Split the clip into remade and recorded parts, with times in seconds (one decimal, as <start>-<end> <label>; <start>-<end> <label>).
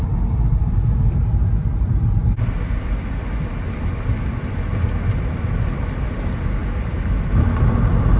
0.0-8.2 recorded